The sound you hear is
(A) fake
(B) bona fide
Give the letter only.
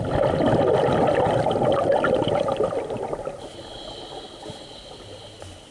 B